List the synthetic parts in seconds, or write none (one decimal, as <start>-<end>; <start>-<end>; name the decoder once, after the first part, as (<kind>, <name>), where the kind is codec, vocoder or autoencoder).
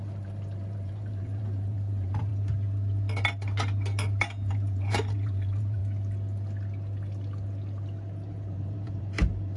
0.0-2.3 (vocoder, BigVGAN v2); 4.5-5.8; 8.3-9.6